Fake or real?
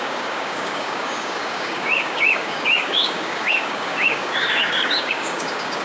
fake